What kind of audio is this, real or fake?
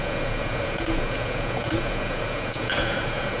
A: fake